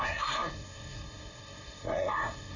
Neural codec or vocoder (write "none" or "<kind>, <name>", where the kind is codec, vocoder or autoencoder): codec, SNAC